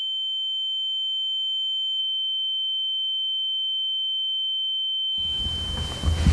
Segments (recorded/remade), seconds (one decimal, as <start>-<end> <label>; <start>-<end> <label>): 0.0-2.0 recorded; 2.0-5.4 remade; 5.4-6.3 recorded